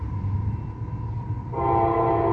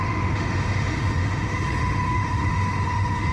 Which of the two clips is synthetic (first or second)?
second